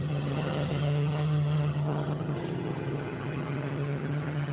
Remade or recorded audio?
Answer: remade